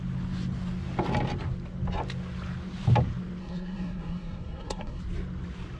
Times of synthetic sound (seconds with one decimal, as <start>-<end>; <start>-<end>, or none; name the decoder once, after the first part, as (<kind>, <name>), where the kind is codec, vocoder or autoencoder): 3.4-5.0 (codec, SNAC)

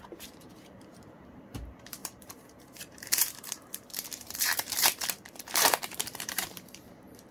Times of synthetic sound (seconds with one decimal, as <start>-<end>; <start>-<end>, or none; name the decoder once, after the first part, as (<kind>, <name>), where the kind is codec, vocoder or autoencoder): 0.0-7.3 (vocoder, BigVGAN v2)

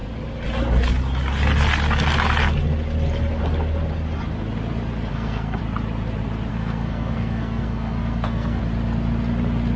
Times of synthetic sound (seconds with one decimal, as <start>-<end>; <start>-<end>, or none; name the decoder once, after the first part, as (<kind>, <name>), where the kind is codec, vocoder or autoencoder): 5.1-5.6 (codec, SNAC); 6.5-8.6

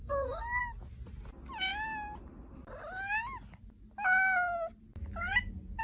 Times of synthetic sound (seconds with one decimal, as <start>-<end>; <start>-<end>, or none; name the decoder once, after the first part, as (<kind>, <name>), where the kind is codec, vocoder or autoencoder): 0.0-0.6 (codec, SNAC)

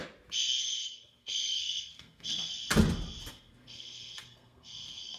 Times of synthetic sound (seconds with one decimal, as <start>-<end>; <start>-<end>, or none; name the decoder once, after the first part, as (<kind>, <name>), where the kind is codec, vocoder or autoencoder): 0.6-2.5 (codec, SNAC); 3.3-5.2

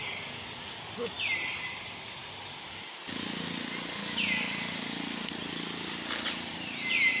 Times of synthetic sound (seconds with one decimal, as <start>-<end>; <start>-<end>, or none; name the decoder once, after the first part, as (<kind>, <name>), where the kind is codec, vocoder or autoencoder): none

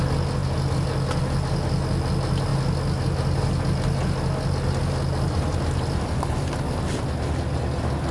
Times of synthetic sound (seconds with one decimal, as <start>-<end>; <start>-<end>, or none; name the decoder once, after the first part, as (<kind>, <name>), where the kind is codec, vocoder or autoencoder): none